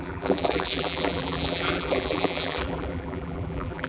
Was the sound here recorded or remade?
remade